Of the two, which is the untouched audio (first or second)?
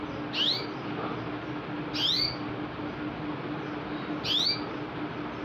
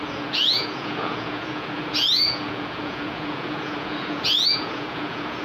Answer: first